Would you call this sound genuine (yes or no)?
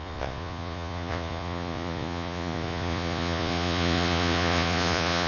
no